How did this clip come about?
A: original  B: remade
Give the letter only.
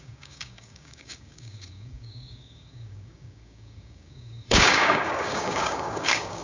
B